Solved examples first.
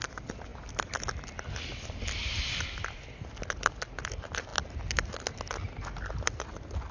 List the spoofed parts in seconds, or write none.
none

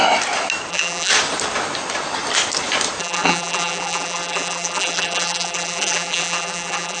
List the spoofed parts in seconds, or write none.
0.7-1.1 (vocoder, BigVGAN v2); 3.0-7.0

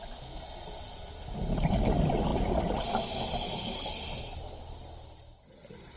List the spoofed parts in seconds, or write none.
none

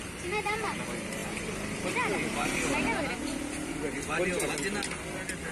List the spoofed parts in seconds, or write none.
none

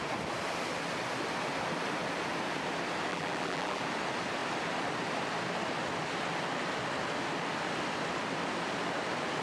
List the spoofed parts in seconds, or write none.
3.1-3.8 (vocoder, BigVGAN v2)